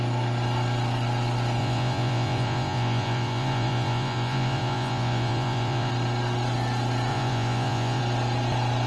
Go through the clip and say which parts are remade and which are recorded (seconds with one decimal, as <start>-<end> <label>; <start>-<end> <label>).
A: 0.0-1.6 recorded; 1.6-5.9 remade; 5.9-7.1 recorded; 7.1-8.0 remade; 8.0-8.9 recorded